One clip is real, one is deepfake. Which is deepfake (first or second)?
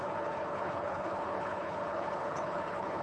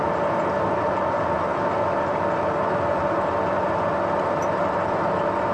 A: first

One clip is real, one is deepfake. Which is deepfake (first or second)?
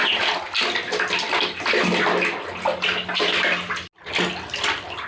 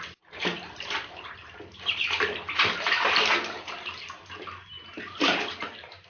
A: second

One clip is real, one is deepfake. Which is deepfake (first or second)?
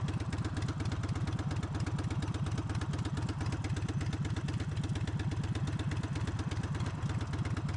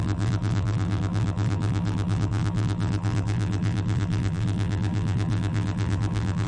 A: second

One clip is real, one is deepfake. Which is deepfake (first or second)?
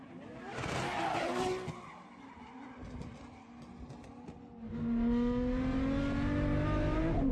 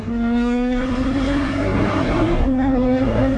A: second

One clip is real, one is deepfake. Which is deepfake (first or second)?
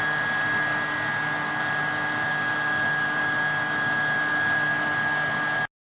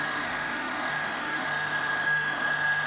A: second